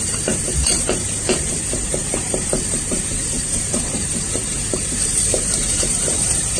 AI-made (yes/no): yes